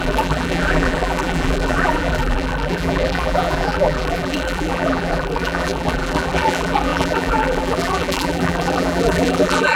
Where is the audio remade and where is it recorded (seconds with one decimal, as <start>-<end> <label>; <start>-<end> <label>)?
0.0-9.8 remade

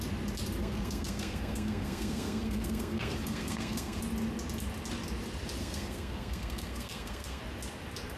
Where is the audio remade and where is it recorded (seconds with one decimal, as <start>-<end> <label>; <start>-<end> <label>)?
0.0-0.6 recorded; 0.6-4.0 remade; 4.0-5.6 recorded; 5.6-7.4 remade; 7.4-8.2 recorded

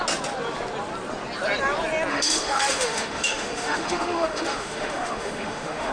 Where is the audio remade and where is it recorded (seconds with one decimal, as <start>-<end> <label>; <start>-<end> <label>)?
0.0-2.1 recorded; 2.1-5.9 remade

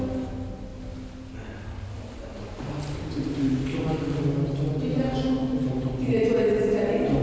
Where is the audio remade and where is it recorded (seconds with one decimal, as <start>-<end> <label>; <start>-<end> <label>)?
0.0-7.2 recorded

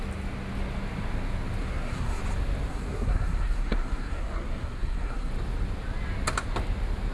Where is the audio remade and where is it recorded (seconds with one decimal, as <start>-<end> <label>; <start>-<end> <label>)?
0.0-1.6 recorded; 1.6-2.2 remade; 2.2-2.7 recorded; 2.7-5.3 remade; 5.3-7.1 recorded

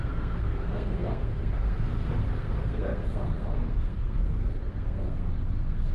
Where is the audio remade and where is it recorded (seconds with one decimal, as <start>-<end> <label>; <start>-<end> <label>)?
0.0-5.9 remade

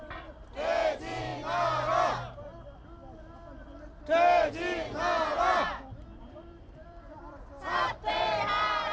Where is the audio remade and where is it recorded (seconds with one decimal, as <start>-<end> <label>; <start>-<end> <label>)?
0.0-1.3 remade; 1.3-6.2 recorded; 6.2-8.9 remade

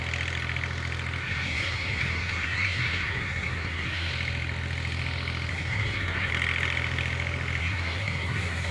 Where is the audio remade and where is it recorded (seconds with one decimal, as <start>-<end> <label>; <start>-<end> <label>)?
0.0-1.2 recorded; 1.2-4.1 remade; 4.1-5.5 recorded; 5.5-6.3 remade; 6.3-7.6 recorded; 7.6-8.7 remade